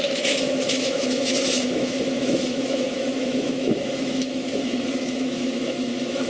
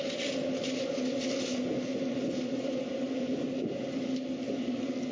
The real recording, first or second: second